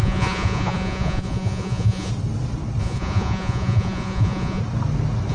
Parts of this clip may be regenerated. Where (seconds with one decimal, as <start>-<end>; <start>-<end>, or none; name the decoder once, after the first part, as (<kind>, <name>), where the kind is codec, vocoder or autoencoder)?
0.0-2.1 (vocoder, Vocos); 2.8-4.6